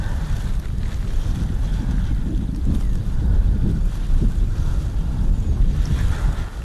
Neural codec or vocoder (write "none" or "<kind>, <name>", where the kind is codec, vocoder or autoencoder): none